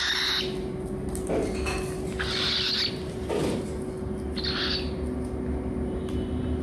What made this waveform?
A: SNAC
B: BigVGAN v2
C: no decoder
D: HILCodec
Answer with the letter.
C